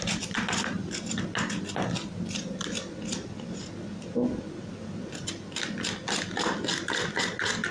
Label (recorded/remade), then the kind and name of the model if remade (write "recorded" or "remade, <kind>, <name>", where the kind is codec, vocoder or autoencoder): recorded